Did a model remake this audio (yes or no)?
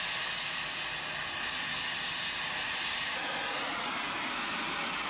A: no